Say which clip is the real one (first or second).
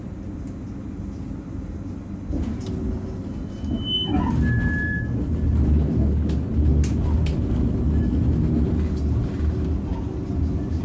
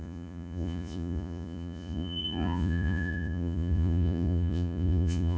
first